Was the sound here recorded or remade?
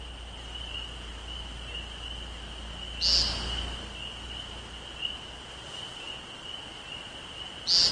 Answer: recorded